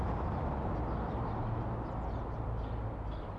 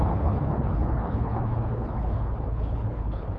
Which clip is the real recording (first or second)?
first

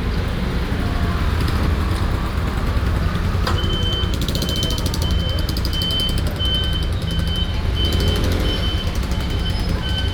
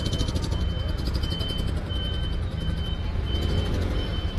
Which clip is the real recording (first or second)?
first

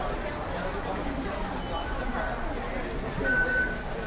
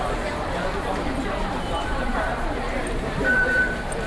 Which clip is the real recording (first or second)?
first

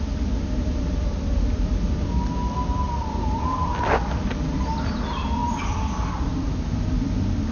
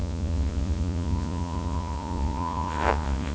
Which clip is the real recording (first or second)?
first